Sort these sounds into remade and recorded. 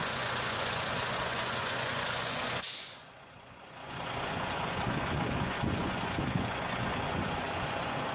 remade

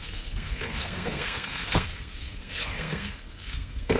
remade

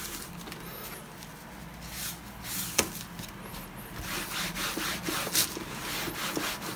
recorded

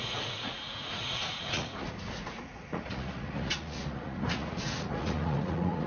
remade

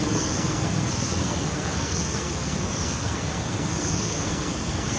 remade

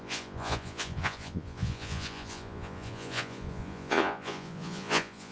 remade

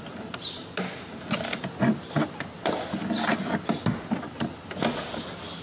recorded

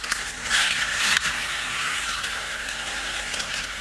remade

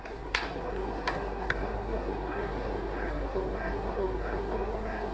remade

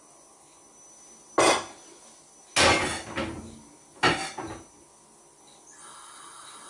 recorded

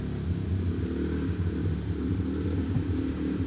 recorded